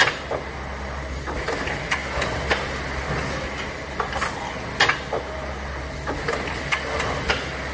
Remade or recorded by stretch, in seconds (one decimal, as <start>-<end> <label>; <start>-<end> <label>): 0.0-7.7 recorded